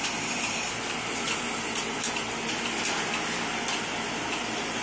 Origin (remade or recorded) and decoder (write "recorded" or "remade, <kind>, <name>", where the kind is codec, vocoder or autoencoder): recorded